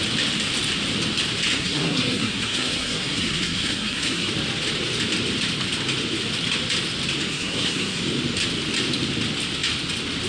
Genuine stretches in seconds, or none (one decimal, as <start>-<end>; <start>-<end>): 0.0-1.5; 4.3-7.3; 8.0-10.3